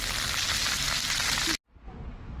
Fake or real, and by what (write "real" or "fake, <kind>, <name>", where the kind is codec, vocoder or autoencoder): real